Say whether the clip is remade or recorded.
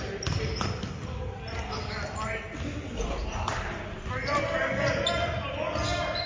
recorded